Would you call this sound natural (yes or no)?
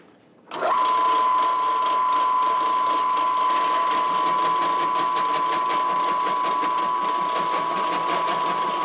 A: yes